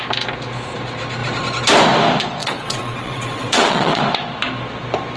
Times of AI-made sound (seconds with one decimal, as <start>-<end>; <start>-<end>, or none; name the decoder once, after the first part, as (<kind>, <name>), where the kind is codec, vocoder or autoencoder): 2.4-4.0 (vocoder, WaveNeXt)